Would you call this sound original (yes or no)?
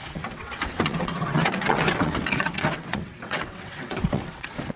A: no